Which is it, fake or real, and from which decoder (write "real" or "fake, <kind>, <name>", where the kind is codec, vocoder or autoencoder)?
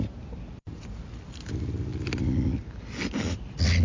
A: real